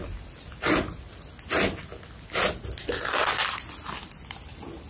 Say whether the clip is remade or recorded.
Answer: recorded